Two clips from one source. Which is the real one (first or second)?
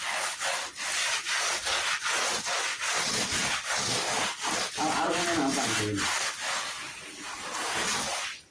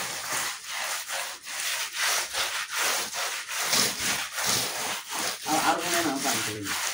first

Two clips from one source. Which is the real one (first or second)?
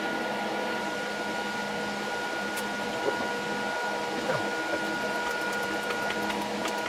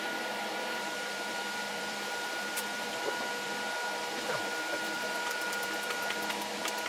first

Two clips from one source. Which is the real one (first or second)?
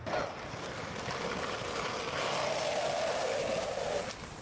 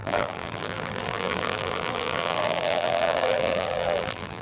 first